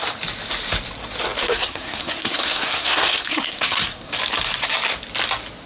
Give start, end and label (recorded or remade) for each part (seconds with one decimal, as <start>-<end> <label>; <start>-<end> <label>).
0.0-1.4 recorded; 1.4-4.1 remade; 4.1-5.7 recorded